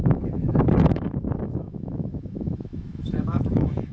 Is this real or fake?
fake